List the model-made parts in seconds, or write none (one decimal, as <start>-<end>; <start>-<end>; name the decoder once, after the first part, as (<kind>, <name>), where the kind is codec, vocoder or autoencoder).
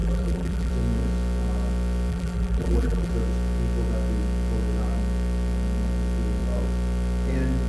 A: 0.0-0.7 (vocoder, BigVGAN v2); 2.1-3.1